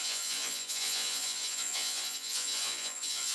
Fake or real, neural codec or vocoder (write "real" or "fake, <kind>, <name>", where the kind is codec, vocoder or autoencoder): fake, vocoder, Vocos